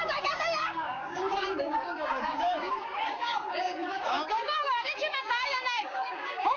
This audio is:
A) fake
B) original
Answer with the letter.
A